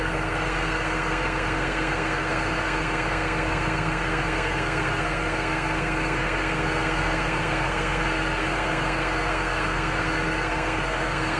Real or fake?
fake